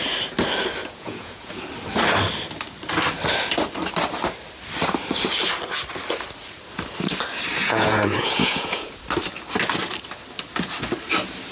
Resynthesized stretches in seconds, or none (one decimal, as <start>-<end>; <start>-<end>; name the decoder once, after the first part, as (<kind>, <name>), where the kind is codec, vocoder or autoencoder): 0.8-1.5 (vocoder, Vocos); 7.6-9.0